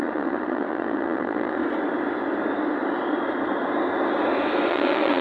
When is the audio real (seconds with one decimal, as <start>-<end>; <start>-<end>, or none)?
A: 1.6-4.7